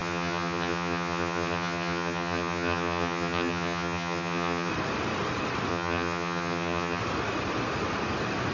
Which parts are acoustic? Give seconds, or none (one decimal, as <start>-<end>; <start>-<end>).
4.7-5.7; 7.0-8.5